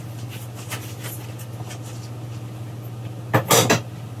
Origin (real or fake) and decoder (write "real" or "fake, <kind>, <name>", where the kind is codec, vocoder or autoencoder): real